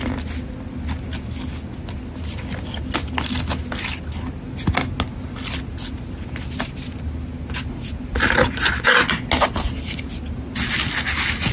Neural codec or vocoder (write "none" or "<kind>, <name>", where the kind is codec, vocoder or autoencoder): none